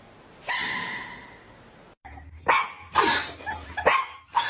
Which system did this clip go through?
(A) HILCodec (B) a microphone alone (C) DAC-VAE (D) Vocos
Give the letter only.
B